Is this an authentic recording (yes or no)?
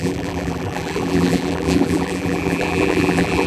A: no